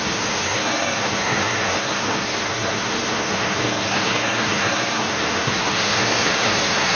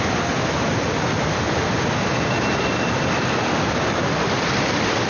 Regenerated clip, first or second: first